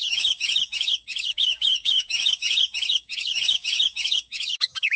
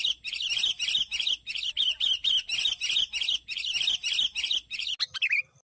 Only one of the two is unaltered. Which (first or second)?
second